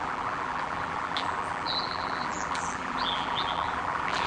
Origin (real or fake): fake